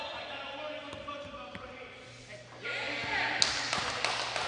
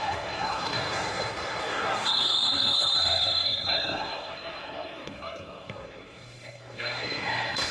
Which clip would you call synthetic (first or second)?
second